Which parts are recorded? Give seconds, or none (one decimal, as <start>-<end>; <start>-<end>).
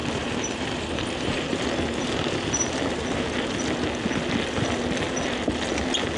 1.6-6.2